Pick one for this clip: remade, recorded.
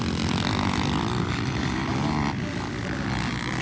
recorded